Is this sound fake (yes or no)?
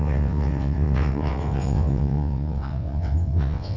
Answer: yes